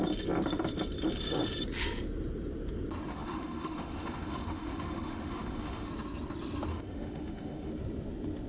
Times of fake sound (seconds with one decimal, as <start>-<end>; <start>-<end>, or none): 3.1-5.9; 6.7-7.7